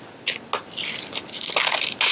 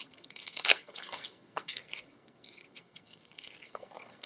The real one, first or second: first